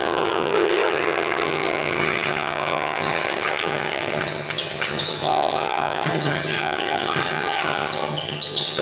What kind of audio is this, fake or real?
fake